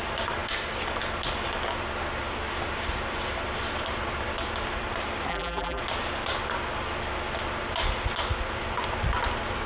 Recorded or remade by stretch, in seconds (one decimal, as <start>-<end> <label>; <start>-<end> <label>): 0.0-5.3 recorded; 5.3-5.8 remade; 5.8-9.7 recorded